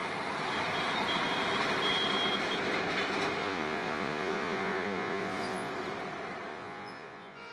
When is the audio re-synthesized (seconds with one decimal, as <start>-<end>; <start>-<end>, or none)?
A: 3.4-5.7; 6.5-7.5